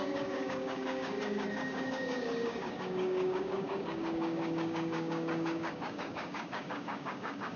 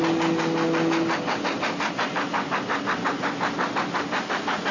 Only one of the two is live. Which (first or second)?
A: second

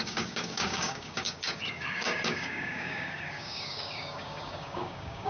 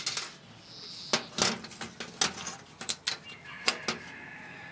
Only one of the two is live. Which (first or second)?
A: second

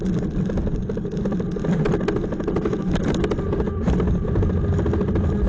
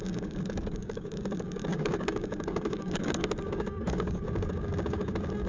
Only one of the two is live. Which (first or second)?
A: first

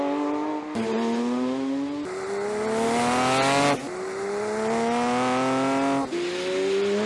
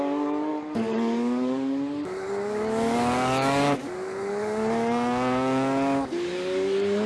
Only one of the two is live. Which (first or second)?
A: first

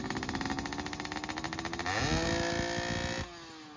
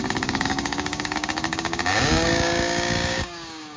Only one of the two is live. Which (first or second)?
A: first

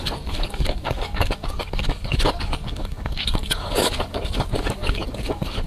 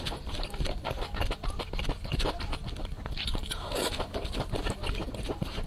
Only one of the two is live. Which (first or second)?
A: second